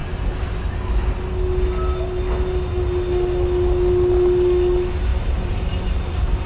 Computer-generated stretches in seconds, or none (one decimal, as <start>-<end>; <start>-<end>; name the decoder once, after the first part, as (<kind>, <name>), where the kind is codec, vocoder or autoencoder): 5.1-6.5 (vocoder, BigVGAN v2)